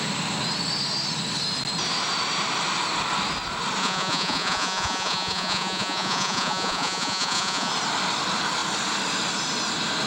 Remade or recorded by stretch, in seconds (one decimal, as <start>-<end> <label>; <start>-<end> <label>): 0.0-3.8 recorded; 3.8-7.7 remade; 7.7-10.1 recorded